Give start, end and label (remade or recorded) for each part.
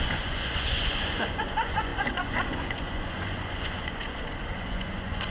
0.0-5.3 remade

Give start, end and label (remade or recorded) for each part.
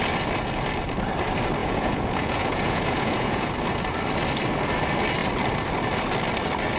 0.0-1.6 recorded; 1.6-3.5 remade; 3.5-6.8 recorded